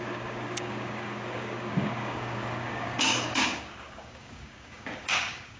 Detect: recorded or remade remade